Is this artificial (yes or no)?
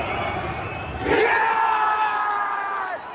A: no